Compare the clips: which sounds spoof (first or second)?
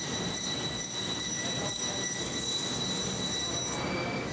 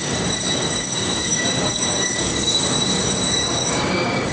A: second